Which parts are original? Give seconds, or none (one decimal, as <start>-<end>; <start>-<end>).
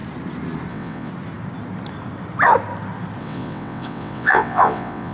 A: 0.0-0.7; 1.1-3.2